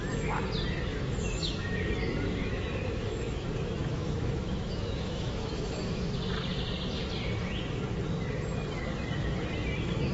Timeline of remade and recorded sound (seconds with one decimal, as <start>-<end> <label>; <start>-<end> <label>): 0.0-0.9 recorded; 0.9-1.9 remade; 1.9-2.4 recorded; 2.4-6.3 remade; 6.3-10.1 recorded